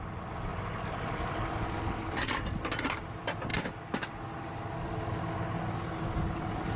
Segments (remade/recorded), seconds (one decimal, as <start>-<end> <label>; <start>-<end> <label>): 0.0-3.5 remade; 3.5-6.3 recorded; 6.3-6.8 remade